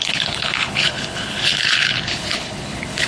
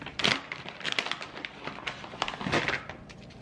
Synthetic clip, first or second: first